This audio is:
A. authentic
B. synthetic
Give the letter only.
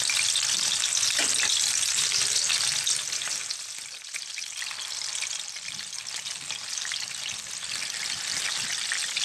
A